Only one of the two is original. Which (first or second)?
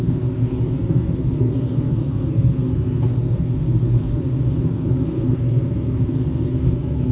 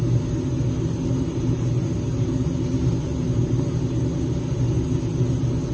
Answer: second